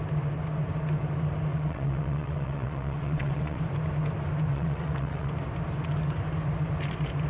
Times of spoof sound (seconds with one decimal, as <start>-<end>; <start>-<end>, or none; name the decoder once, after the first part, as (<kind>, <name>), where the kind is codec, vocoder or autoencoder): 1.5-3.6 (vocoder, WaveNeXt); 4.5-5.3